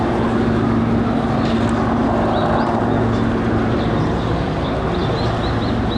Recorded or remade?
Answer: recorded